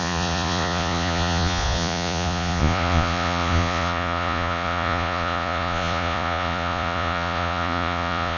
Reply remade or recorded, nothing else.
remade